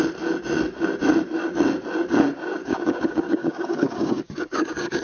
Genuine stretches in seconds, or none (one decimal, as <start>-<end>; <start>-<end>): 0.0-2.6